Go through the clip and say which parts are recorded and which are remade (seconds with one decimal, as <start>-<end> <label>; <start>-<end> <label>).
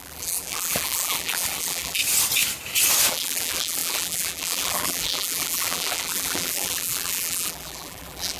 0.0-2.0 remade; 2.0-3.1 recorded; 3.1-8.4 remade